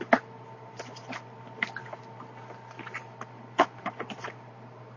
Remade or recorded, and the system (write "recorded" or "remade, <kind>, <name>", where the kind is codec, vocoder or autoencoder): recorded